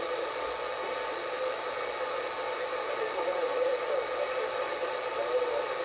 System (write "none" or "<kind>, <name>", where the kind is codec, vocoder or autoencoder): none